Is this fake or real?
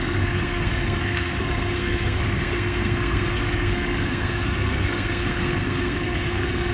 fake